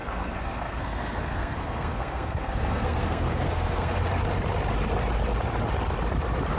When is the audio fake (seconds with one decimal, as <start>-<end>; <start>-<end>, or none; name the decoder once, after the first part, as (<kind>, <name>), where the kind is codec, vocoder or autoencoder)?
0.0-4.0 (codec, SNAC)